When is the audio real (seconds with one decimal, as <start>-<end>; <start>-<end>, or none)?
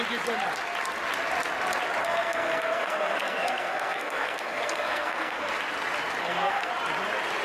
0.0-2.0; 5.5-6.2; 6.7-7.4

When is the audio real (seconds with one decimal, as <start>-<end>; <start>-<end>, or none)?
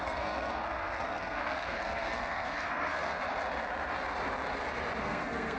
3.2-5.0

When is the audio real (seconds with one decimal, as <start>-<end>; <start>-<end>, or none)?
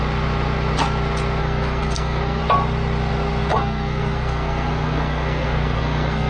0.0-1.4; 2.4-3.5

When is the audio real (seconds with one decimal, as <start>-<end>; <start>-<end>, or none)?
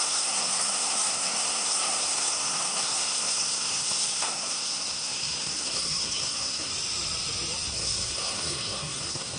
6.7-7.7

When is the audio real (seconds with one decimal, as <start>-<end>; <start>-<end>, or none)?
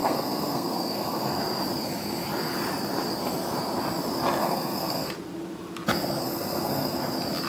1.4-4.4; 5.1-6.2; 7.0-7.5